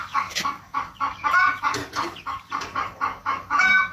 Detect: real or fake fake